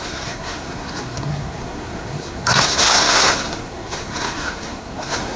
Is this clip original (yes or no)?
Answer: no